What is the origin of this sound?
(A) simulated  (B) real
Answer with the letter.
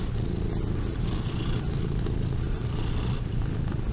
B